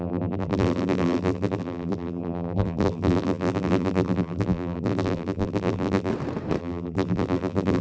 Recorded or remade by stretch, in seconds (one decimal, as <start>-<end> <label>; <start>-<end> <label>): 0.0-6.1 remade; 6.1-6.6 recorded; 6.6-7.8 remade